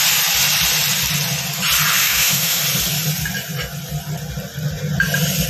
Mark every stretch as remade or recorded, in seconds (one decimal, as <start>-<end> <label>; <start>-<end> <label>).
0.0-2.0 recorded; 2.0-2.6 remade; 2.6-5.5 recorded